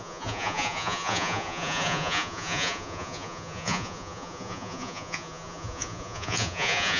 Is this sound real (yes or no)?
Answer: no